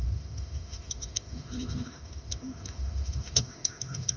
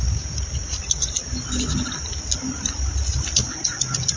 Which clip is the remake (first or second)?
first